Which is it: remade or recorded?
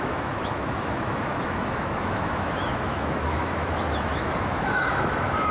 remade